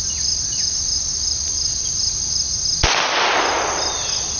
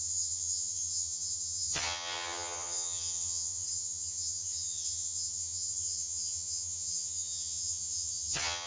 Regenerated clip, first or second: second